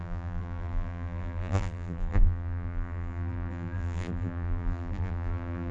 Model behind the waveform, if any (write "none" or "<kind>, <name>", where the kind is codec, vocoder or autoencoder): vocoder, BigVGAN v2